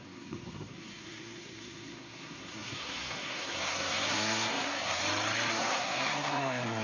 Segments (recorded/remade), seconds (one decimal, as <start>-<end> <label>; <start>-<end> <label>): 0.0-5.0 remade; 5.0-5.5 recorded; 5.5-6.8 remade